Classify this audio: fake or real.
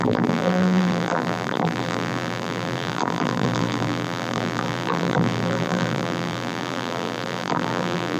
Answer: fake